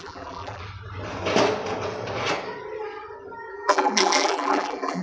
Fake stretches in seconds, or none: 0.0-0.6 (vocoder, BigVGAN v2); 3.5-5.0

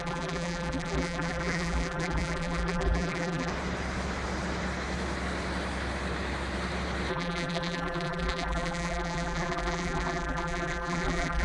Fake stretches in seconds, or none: 0.0-3.5 (vocoder, BigVGAN v2); 7.1-11.4